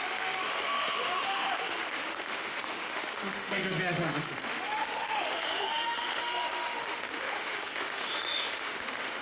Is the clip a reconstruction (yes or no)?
yes